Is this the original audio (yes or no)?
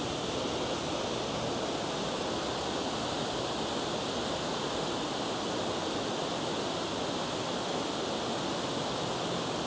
yes